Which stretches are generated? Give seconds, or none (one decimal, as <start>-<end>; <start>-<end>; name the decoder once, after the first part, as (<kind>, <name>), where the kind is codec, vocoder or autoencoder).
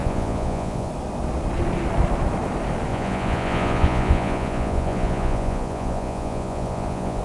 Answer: 0.0-0.9 (vocoder, Vocos); 2.9-7.2